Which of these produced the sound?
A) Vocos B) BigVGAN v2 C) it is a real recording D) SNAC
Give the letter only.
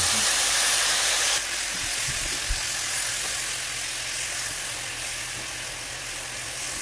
C